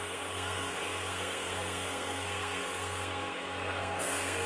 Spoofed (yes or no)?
yes